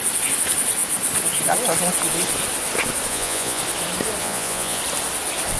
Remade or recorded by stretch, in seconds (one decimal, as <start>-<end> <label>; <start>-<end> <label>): 0.0-3.1 recorded; 3.1-3.6 remade; 3.6-4.2 recorded; 4.2-4.8 remade; 4.8-5.6 recorded